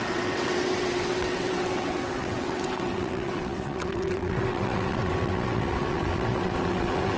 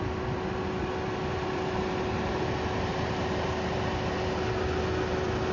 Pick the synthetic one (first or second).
first